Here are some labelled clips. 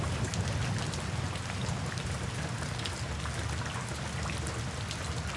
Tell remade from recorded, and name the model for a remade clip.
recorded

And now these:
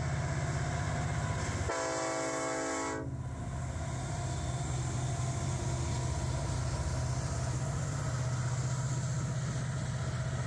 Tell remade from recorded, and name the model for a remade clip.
recorded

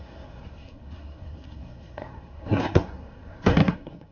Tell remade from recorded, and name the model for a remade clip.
remade, codec, SNAC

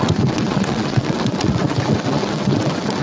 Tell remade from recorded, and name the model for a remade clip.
remade, vocoder, WaveNeXt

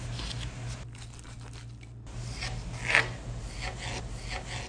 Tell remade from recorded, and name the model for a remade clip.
recorded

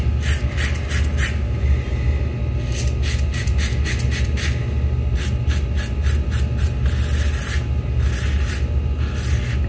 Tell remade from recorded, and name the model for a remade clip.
recorded